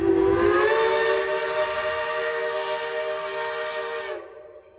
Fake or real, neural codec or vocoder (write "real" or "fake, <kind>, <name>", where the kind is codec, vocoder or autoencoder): real